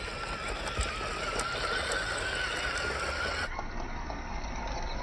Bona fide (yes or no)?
yes